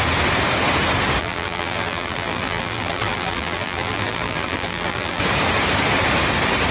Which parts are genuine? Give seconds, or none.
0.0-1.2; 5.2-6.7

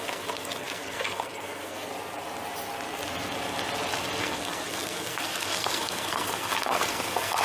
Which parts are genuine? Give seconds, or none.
1.9-4.2

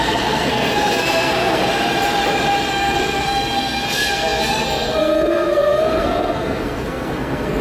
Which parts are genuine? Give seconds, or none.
1.6-2.7

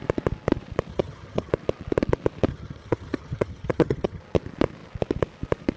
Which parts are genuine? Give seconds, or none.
0.0-0.9; 1.5-2.5; 4.2-5.8

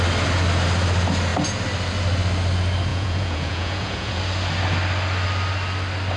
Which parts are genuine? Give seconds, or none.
0.0-2.9; 4.2-6.2

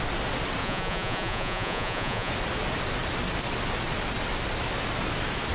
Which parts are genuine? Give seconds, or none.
0.0-0.6; 2.3-5.5